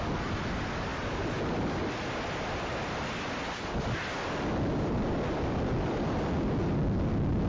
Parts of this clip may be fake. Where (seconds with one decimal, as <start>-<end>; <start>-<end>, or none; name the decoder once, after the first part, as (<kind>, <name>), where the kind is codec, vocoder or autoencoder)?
none